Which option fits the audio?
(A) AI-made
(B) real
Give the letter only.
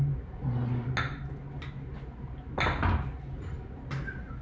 B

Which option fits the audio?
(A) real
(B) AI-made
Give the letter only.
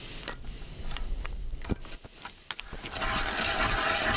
A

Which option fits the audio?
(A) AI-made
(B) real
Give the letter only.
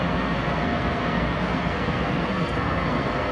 A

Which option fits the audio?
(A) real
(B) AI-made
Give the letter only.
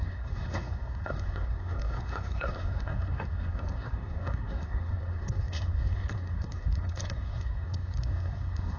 B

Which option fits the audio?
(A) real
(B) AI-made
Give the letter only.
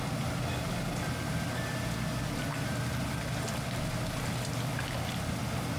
A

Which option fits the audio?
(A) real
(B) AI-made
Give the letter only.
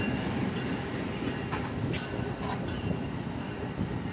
A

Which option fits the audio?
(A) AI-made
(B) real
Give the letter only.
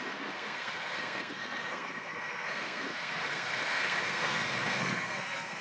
A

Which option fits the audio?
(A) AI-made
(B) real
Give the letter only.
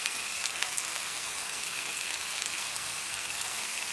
A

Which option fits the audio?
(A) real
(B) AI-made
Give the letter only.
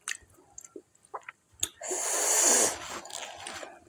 A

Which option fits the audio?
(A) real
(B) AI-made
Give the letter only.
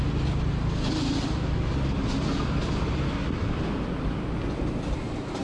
A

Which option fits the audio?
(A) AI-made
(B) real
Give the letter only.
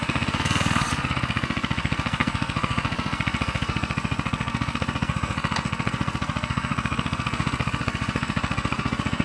A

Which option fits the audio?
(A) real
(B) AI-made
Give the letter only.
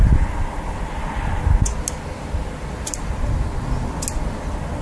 A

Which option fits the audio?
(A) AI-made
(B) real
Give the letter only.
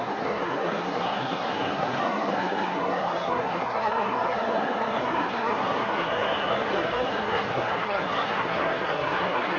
A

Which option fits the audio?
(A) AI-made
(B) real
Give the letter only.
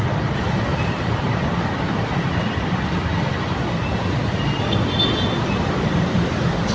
B